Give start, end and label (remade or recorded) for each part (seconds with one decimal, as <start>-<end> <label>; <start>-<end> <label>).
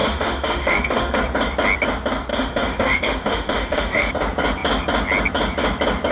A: 0.0-1.2 remade; 1.2-2.3 recorded; 2.3-4.1 remade; 4.1-6.1 recorded